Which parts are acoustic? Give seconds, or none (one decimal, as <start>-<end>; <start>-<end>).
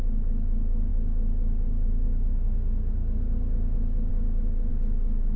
0.0-5.4